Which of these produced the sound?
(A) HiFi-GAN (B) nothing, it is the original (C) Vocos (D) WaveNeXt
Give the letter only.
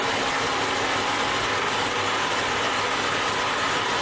B